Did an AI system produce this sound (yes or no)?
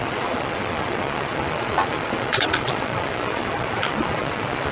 yes